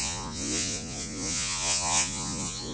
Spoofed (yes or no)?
yes